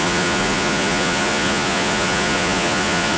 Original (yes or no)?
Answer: no